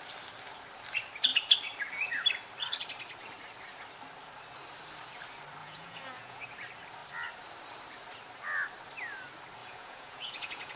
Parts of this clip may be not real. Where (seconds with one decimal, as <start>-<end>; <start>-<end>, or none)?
5.6-6.4; 9.6-10.8